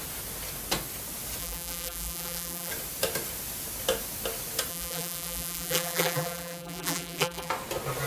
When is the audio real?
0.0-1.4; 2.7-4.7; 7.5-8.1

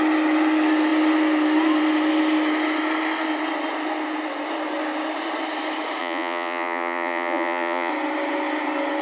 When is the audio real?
0.0-6.0; 7.9-9.0

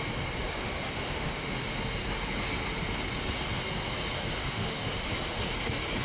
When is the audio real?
0.0-0.6; 1.6-4.4; 5.1-6.0